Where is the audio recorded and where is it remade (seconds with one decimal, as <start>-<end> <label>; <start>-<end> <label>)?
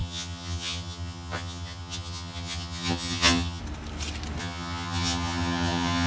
0.0-3.6 remade; 3.6-4.4 recorded; 4.4-6.1 remade